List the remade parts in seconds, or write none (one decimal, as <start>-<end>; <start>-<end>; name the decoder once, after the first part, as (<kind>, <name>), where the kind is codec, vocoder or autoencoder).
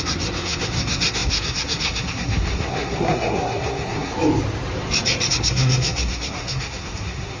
0.0-4.1 (codec, SNAC); 5.3-7.4